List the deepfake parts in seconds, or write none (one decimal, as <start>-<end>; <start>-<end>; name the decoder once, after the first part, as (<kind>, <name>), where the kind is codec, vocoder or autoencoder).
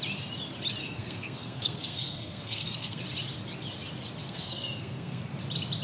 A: 0.8-3.0 (codec, SNAC); 4.2-5.2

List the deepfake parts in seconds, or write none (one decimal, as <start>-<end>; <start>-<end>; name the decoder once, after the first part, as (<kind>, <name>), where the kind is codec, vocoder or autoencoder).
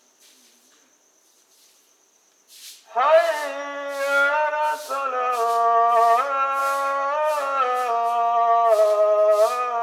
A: 6.6-7.3 (autoencoder, DAC-VAE)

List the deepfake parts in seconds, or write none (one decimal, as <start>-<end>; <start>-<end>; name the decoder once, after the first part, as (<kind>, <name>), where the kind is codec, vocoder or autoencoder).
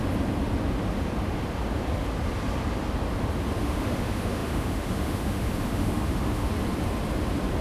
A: 3.6-6.5 (autoencoder, DAC-VAE)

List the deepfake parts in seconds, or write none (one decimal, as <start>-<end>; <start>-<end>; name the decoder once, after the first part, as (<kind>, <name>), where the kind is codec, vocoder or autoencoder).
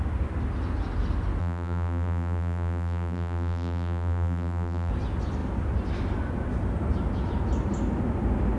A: 1.4-4.9 (vocoder, BigVGAN v2)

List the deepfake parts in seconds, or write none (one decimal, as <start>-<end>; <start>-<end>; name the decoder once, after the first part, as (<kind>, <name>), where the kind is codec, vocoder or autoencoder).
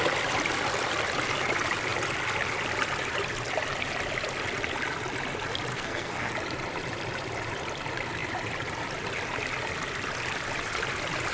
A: 5.7-6.3 (codec, SNAC)